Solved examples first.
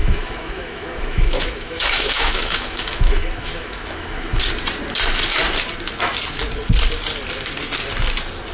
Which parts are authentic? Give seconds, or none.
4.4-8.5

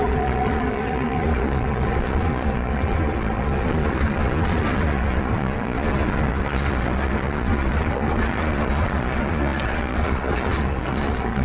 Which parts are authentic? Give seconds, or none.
none

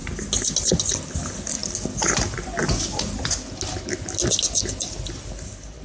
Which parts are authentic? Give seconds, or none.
0.0-5.8

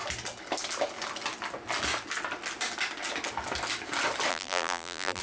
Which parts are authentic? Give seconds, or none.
0.0-4.3

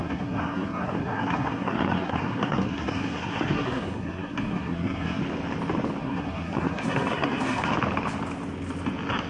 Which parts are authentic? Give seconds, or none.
5.2-6.0; 7.7-9.3